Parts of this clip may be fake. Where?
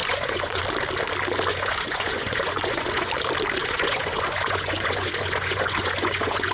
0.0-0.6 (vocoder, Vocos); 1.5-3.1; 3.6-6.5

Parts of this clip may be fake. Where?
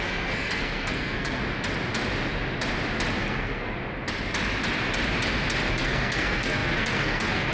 0.0-1.4 (codec, SNAC); 3.2-3.8; 5.7-7.5